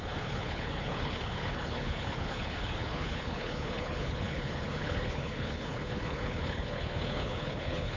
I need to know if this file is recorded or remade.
remade